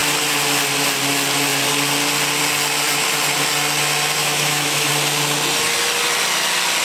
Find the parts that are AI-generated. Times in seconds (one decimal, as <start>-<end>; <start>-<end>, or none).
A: 4.2-4.9

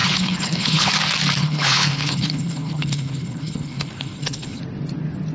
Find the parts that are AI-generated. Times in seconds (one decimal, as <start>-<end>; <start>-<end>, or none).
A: 0.0-0.9; 1.4-4.6

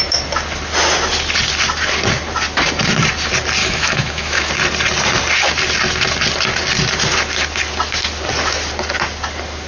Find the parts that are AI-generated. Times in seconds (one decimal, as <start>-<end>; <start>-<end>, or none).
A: 3.6-4.5